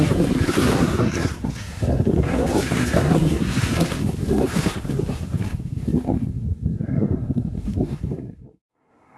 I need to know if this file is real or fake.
fake